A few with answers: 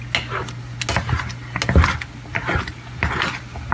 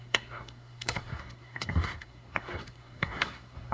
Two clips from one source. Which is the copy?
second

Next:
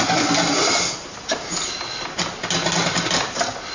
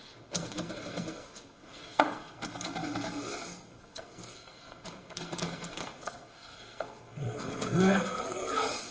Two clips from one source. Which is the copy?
second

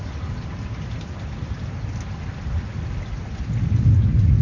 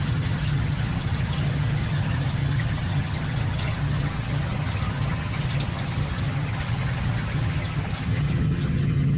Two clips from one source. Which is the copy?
second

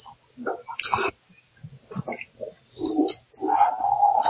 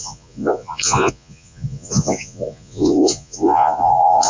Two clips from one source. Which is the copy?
second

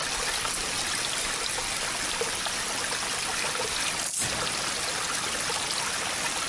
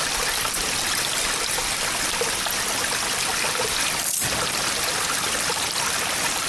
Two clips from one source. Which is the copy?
second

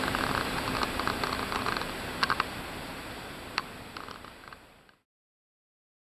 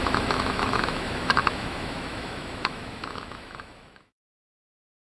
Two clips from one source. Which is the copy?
second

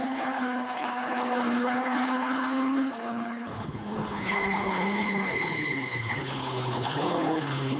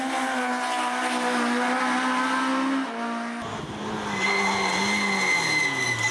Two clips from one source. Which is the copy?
first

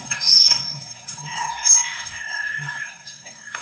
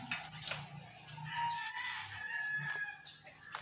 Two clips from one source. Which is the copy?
first